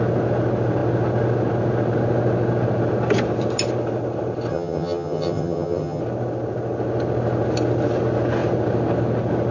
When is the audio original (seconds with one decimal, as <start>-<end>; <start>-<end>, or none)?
0.0-4.5; 6.0-9.5